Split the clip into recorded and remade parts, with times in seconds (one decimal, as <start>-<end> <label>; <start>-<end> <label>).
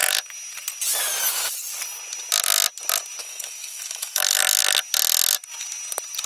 0.0-3.2 recorded; 3.2-4.4 remade; 4.4-6.3 recorded